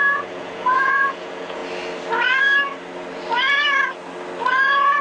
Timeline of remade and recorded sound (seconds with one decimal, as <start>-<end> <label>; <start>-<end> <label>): 0.0-1.6 remade; 1.6-4.6 recorded; 4.6-5.0 remade